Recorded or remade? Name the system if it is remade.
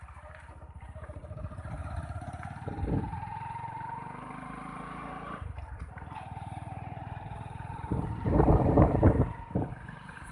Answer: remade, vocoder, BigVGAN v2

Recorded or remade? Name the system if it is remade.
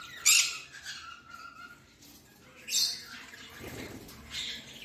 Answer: recorded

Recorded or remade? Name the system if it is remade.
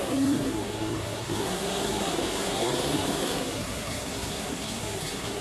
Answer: remade, codec, SNAC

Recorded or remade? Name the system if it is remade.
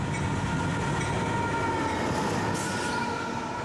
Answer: recorded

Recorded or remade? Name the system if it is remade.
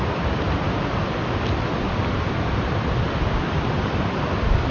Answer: recorded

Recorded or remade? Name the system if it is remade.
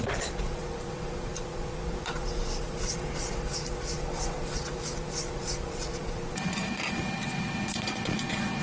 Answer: remade, vocoder, Vocos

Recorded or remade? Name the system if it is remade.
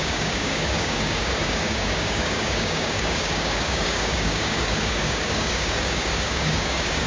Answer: remade, codec, DAC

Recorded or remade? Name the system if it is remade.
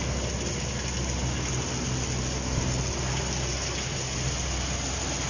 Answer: recorded